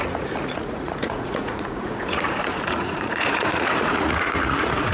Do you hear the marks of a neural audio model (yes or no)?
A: yes